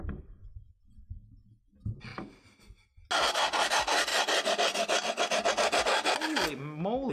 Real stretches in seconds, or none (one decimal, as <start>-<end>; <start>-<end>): 0.0-7.1